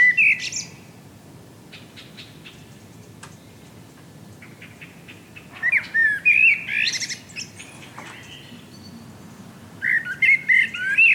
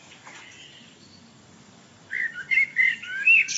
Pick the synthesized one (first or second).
second